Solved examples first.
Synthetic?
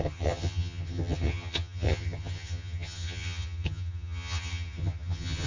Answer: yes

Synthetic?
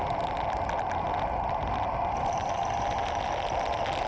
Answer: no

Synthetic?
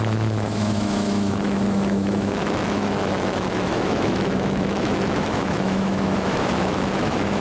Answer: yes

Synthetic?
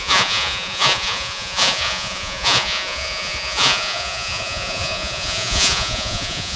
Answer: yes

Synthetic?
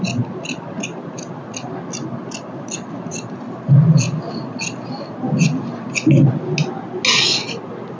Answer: no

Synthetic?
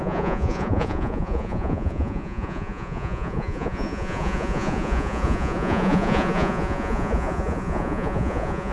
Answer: yes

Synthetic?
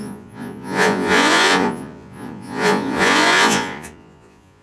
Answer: yes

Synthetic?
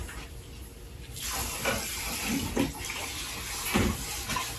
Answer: no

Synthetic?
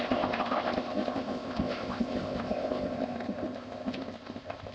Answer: yes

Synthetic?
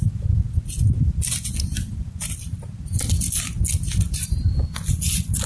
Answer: no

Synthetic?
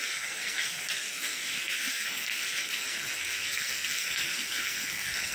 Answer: yes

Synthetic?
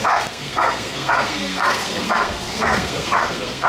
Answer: yes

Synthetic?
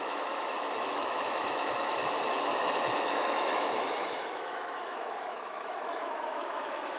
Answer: yes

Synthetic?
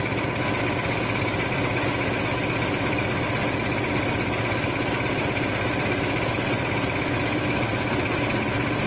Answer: no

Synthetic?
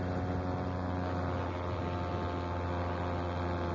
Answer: no